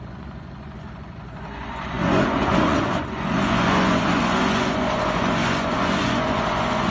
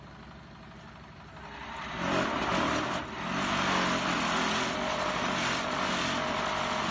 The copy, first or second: first